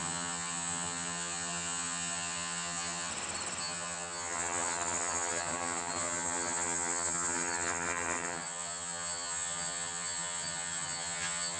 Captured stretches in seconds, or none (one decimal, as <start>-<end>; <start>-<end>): 3.1-3.6